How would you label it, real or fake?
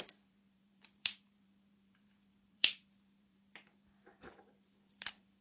fake